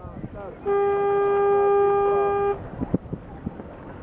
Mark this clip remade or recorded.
recorded